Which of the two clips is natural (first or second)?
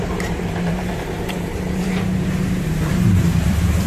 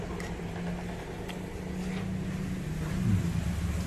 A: second